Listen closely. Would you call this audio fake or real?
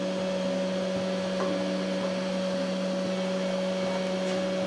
real